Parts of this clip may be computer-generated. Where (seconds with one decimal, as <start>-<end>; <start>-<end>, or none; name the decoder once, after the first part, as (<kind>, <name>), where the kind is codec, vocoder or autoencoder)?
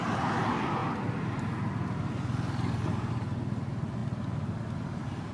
none